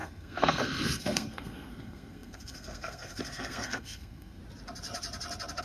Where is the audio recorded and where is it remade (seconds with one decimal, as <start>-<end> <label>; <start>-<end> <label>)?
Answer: 0.0-4.4 remade; 4.4-5.6 recorded